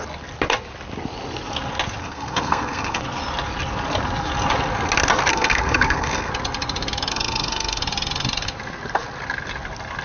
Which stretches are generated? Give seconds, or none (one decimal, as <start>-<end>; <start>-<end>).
2.0-3.0; 5.3-6.3; 7.1-7.8